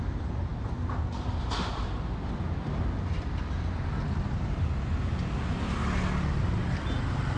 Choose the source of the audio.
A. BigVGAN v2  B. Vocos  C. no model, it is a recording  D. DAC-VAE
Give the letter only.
C